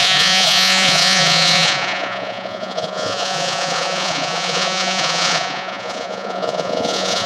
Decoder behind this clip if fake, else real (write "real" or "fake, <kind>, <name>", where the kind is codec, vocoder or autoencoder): fake, vocoder, Vocos